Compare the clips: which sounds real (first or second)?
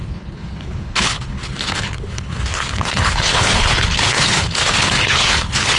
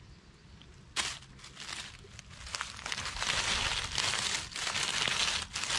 second